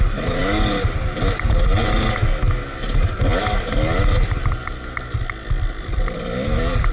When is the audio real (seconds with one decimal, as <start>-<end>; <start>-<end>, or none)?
0.0-6.9